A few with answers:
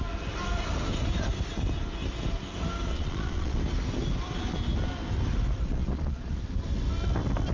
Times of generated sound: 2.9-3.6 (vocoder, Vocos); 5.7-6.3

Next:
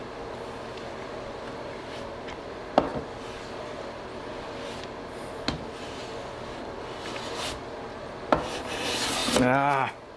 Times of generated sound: none

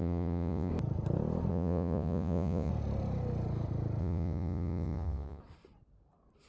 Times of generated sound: 0.0-0.7 (vocoder, Vocos); 1.5-2.7; 4.0-5.4

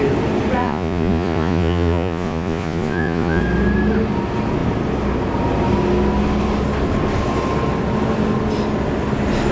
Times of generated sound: 0.6-3.4 (vocoder, Vocos)

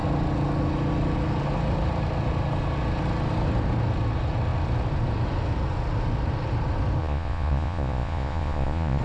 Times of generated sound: 7.0-9.0 (vocoder, Vocos)

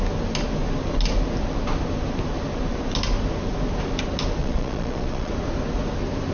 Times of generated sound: 4.4-5.3 (vocoder, Vocos)

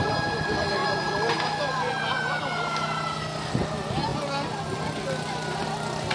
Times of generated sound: none